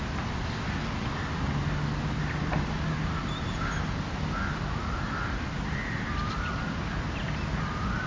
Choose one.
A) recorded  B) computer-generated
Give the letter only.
A